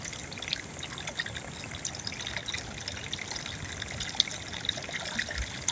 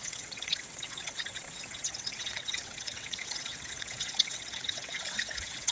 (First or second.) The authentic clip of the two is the first